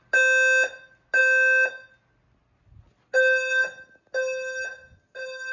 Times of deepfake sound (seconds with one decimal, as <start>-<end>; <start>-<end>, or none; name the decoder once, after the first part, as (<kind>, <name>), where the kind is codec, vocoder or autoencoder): 1.2-1.8 (autoencoder, DAC-VAE)